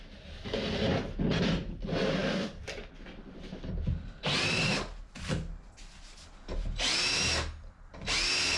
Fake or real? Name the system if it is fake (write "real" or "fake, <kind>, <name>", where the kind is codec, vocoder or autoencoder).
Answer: real